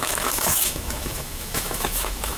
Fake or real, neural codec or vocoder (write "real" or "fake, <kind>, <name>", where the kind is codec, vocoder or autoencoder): fake, autoencoder, DAC-VAE